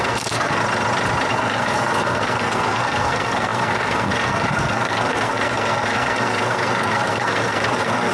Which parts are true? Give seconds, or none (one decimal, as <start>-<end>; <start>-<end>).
0.6-1.3